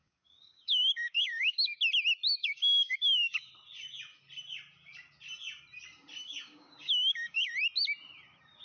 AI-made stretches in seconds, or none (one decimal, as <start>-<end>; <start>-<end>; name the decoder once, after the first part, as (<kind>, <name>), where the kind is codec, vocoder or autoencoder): 0.0-1.8 (codec, DAC); 2.4-3.5; 6.2-7.5